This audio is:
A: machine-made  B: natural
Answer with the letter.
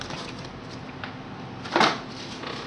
B